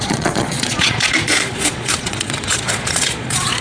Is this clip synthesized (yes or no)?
yes